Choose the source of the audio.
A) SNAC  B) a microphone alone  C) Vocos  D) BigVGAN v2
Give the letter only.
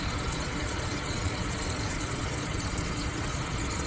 C